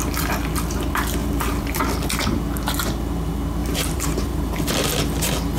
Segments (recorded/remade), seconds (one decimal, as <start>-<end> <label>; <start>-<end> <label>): 0.0-1.2 recorded; 1.2-1.8 remade; 1.8-3.6 recorded; 3.6-4.7 remade; 4.7-5.6 recorded